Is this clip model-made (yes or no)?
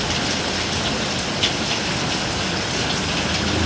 no